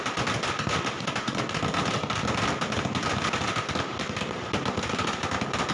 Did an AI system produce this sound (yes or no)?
yes